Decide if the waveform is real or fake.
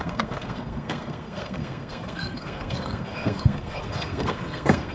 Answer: fake